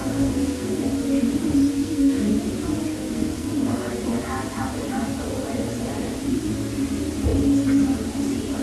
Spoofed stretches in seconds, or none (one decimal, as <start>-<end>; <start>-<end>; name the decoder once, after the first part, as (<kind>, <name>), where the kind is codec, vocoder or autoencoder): 0.0-0.8 (codec, SNAC); 1.7-2.3; 2.9-3.9